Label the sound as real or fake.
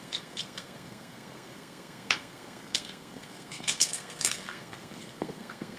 fake